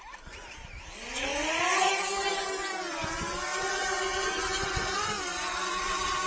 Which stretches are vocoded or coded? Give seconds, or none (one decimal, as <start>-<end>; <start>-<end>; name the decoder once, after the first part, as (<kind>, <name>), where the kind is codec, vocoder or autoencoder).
none